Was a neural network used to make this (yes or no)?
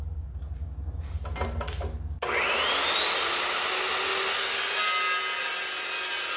no